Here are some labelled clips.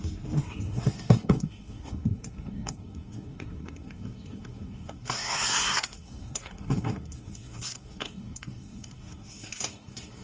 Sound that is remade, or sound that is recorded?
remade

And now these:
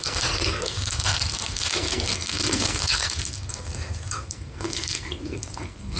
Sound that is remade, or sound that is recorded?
remade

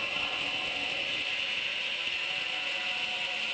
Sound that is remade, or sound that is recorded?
recorded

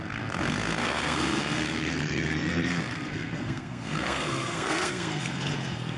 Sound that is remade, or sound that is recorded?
remade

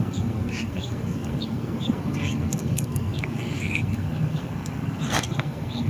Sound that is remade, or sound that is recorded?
remade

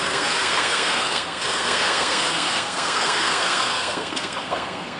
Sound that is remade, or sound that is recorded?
remade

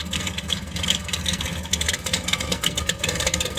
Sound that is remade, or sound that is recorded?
remade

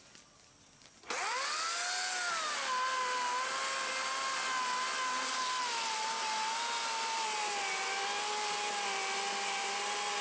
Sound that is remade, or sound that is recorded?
recorded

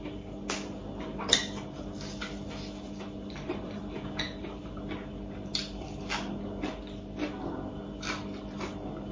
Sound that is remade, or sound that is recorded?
recorded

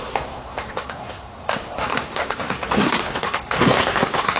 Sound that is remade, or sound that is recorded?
remade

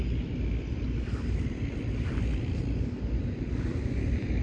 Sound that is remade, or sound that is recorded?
recorded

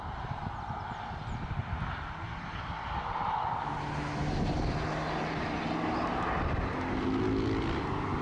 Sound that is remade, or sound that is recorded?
recorded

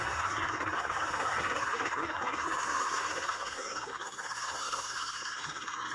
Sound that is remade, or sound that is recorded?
remade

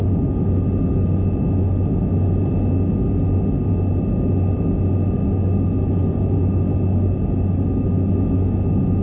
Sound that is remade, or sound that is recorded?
recorded